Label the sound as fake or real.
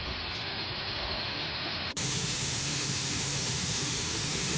fake